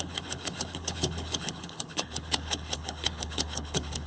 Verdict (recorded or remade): remade